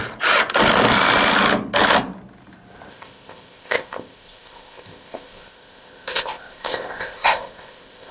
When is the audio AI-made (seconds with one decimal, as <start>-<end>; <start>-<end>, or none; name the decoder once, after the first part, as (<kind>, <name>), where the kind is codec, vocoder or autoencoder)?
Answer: 2.9-8.1 (codec, ZipCodec)